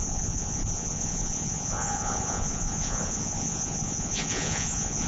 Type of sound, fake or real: fake